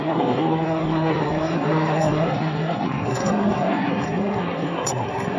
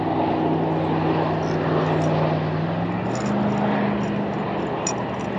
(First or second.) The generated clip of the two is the first